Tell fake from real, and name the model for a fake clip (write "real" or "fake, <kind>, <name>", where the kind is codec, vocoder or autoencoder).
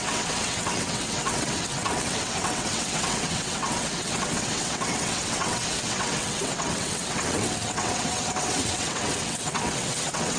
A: fake, vocoder, WaveNeXt